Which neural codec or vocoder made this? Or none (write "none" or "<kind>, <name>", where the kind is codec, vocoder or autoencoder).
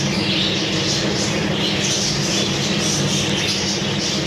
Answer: none